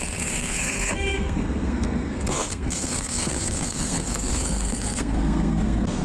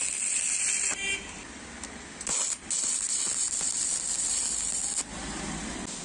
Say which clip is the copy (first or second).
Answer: first